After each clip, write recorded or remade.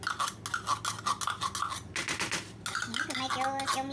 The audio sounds recorded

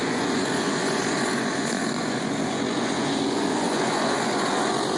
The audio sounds remade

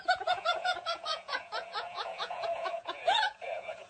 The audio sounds remade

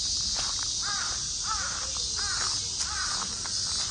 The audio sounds recorded